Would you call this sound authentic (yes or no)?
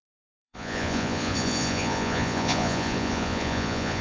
no